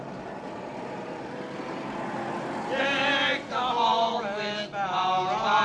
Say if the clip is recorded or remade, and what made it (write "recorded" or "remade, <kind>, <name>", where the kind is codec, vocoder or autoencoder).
recorded